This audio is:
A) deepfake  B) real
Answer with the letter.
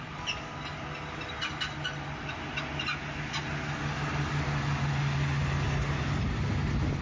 B